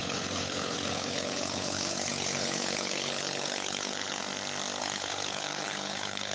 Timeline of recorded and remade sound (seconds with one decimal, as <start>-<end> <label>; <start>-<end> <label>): 0.0-4.2 remade; 4.2-4.8 recorded; 4.8-6.3 remade

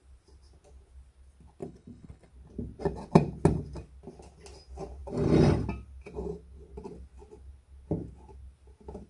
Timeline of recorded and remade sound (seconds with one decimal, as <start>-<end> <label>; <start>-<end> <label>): 0.0-1.6 recorded; 1.6-2.3 remade; 2.3-9.1 recorded

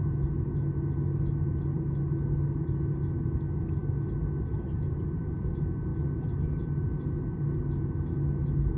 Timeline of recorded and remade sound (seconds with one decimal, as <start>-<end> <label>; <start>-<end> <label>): 0.0-8.8 recorded

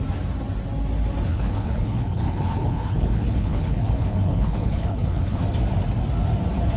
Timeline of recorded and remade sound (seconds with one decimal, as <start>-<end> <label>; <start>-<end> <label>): 0.0-1.3 recorded; 1.3-5.4 remade; 5.4-6.8 recorded

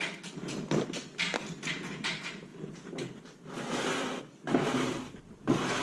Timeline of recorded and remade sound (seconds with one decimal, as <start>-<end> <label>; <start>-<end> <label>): 0.0-5.8 recorded

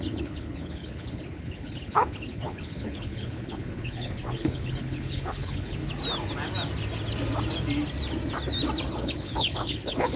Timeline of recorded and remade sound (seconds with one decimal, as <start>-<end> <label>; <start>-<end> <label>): 0.0-5.8 remade; 5.8-8.9 recorded; 8.9-10.2 remade

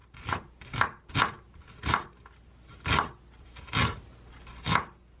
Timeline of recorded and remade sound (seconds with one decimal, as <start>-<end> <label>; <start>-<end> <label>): 0.0-5.2 recorded